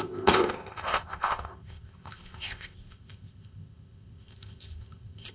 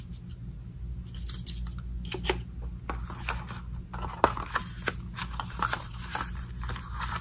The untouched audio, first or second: second